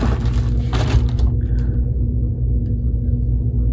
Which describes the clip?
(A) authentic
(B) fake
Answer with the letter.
A